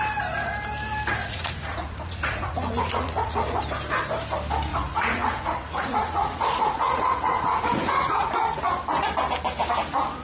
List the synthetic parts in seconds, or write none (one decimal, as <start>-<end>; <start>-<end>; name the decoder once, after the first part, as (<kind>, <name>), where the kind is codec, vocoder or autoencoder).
1.2-3.6 (vocoder, Vocos); 4.7-8.7

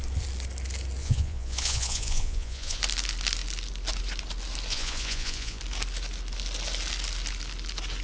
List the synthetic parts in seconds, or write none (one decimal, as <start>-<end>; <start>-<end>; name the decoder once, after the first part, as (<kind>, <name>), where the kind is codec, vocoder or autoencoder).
1.0-2.8 (vocoder, Vocos); 4.7-5.6